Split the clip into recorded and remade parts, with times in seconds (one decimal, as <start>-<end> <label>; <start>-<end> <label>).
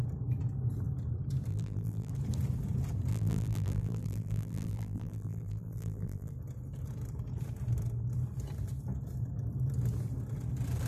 0.0-1.5 recorded; 1.5-2.1 remade; 2.1-3.1 recorded; 3.1-6.3 remade; 6.3-10.9 recorded